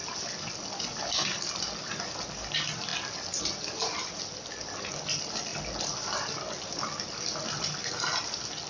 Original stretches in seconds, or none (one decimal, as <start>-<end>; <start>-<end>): 0.0-1.1; 2.9-3.4; 5.5-7.5